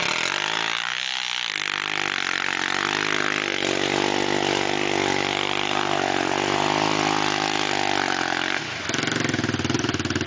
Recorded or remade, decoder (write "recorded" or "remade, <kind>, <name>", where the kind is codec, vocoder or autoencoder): recorded